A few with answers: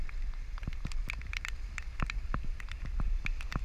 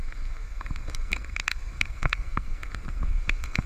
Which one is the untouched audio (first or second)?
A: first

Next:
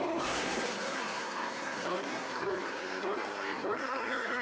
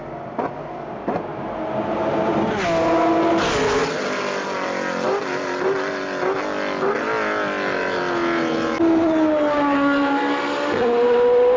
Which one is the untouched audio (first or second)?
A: second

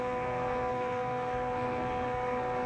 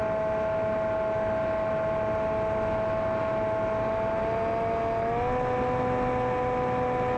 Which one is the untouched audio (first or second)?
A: second